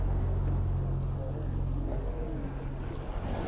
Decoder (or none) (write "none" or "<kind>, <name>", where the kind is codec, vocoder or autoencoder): none